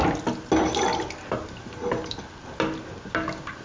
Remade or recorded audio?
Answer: recorded